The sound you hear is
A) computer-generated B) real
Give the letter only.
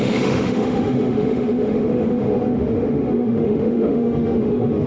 A